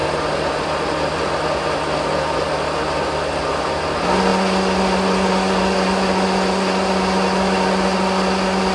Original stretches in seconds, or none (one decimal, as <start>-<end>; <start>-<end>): 0.0-8.7